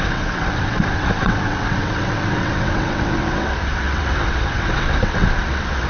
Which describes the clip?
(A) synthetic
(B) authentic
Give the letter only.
A